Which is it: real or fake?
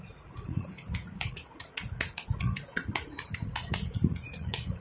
fake